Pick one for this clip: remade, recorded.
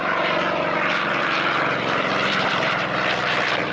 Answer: remade